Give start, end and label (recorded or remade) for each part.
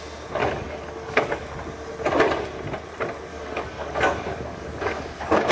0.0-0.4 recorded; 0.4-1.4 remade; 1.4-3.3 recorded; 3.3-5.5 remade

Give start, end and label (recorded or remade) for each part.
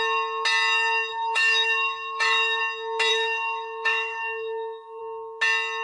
0.0-1.1 recorded; 1.1-2.6 remade; 2.6-3.1 recorded; 3.1-5.0 remade; 5.0-5.8 recorded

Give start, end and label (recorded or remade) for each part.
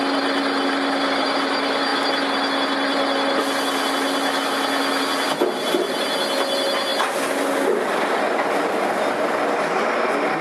0.0-10.4 recorded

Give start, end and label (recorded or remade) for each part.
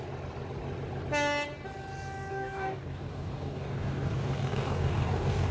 0.0-2.3 recorded; 2.3-5.5 remade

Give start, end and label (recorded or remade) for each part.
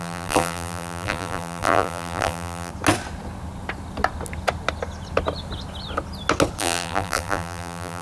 0.0-2.7 remade; 2.7-6.6 recorded; 6.6-8.0 remade